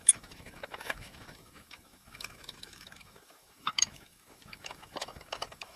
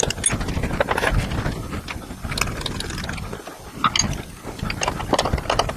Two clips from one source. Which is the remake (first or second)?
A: first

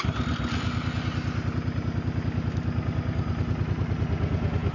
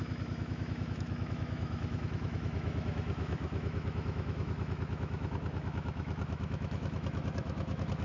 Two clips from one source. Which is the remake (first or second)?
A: second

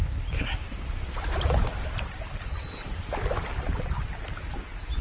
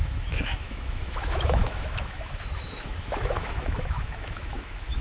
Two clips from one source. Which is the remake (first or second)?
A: second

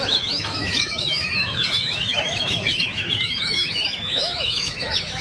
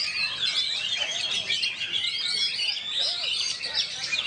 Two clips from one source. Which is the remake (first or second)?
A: first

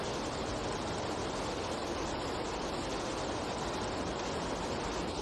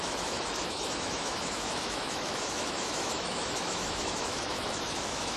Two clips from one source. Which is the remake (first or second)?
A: second